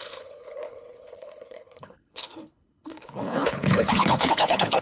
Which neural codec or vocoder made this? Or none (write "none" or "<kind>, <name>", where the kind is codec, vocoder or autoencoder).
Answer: codec, HILCodec